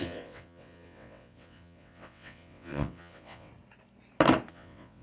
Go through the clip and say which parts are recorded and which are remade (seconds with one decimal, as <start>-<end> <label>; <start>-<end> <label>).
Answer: 0.0-3.5 remade; 3.5-4.5 recorded; 4.5-5.0 remade